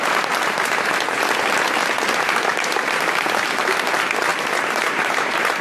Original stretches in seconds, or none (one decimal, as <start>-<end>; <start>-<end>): 0.0-2.5; 3.6-4.3